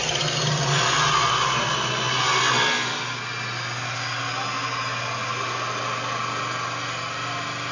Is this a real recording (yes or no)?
yes